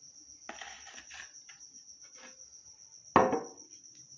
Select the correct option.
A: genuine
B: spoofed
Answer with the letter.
A